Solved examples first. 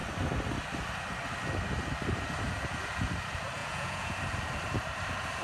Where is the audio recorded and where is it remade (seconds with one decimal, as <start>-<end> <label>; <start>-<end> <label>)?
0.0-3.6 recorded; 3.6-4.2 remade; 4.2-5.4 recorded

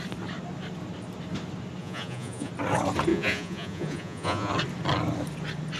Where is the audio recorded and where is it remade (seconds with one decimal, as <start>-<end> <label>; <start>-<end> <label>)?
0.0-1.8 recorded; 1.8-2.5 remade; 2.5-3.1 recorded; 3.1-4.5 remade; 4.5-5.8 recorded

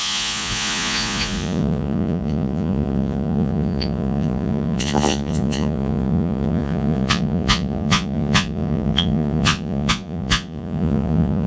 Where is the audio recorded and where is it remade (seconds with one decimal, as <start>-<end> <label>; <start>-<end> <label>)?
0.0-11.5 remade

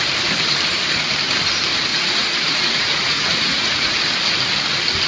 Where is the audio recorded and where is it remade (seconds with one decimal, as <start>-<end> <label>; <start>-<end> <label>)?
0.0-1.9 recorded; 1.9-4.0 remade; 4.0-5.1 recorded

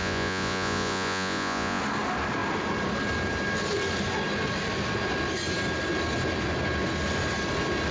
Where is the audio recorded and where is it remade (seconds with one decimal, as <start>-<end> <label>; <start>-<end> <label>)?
0.0-1.8 remade; 1.8-7.9 recorded

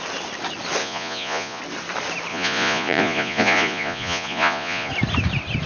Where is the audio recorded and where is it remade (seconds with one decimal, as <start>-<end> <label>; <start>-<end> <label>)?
0.0-0.8 recorded; 0.8-1.6 remade; 1.6-2.3 recorded; 2.3-4.9 remade; 4.9-5.7 recorded

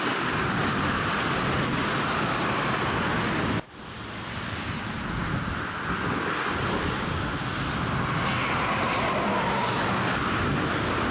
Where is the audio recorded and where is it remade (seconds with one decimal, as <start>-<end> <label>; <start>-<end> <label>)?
0.0-11.1 recorded